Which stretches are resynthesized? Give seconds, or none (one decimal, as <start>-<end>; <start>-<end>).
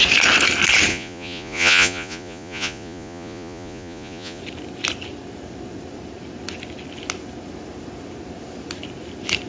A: 0.9-4.4